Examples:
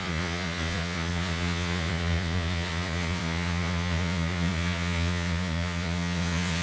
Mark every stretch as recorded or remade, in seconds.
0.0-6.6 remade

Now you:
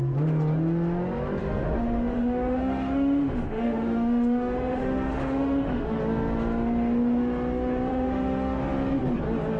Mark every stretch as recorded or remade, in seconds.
0.0-1.4 recorded; 1.4-6.0 remade; 6.0-7.9 recorded; 7.9-8.6 remade; 8.6-9.6 recorded

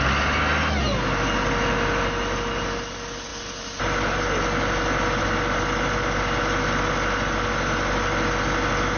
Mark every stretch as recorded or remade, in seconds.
0.0-9.0 recorded

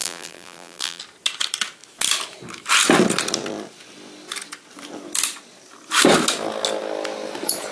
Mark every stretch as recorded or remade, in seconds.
0.0-1.0 remade; 1.0-7.7 recorded

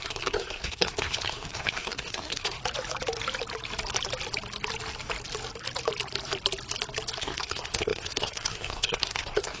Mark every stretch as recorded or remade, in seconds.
0.0-2.6 remade; 2.6-7.2 recorded; 7.2-9.6 remade

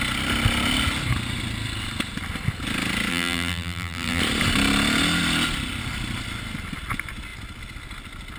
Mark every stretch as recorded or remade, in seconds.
0.0-3.1 recorded; 3.1-4.2 remade; 4.2-8.4 recorded

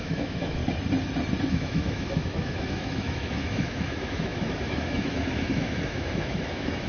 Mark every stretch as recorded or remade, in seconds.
0.0-0.6 remade; 0.6-1.5 recorded; 1.5-6.9 remade